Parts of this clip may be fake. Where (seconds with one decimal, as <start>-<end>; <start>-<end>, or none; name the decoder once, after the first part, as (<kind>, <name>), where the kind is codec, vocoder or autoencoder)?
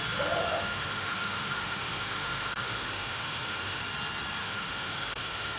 0.4-3.8 (autoencoder, DAC-VAE); 4.4-5.6